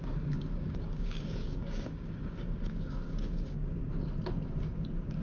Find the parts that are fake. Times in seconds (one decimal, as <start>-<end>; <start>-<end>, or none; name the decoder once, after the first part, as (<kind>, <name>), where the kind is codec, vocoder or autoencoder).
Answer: 0.0-3.8 (codec, DAC); 4.6-5.2